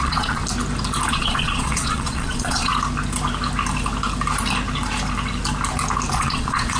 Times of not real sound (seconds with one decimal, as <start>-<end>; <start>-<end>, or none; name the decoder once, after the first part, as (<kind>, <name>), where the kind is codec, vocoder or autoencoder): 0.0-0.4 (vocoder, Vocos); 1.1-2.7; 6.1-6.8